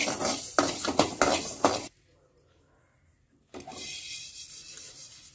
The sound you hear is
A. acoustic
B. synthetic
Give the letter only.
A